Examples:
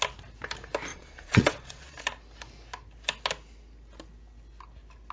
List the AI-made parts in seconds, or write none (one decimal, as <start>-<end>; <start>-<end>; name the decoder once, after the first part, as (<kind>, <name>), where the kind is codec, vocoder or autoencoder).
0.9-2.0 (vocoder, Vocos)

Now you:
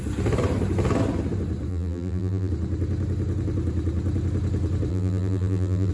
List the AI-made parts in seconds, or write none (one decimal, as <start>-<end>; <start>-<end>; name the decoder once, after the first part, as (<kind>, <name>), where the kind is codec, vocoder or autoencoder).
1.7-2.5 (vocoder, BigVGAN v2); 4.9-5.9

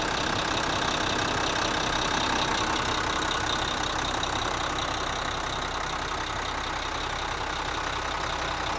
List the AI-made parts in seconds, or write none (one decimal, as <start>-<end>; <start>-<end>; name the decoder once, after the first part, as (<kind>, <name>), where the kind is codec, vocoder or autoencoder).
none

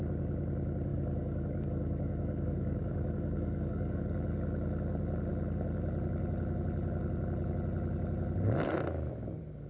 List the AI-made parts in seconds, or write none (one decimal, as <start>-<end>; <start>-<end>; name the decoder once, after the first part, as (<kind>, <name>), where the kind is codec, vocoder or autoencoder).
0.9-4.0 (codec, DAC)

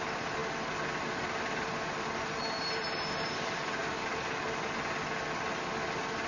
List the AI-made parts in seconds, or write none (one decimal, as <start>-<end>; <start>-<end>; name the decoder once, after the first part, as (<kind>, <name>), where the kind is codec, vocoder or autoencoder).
none

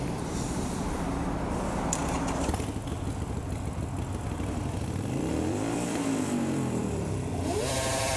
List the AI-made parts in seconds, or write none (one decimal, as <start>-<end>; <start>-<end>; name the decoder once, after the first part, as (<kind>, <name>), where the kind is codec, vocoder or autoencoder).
0.0-2.0 (vocoder, BigVGAN v2); 5.3-8.2